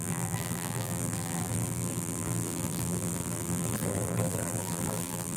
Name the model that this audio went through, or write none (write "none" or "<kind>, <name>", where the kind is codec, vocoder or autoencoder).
vocoder, BigVGAN v2